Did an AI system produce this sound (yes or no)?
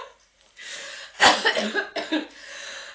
no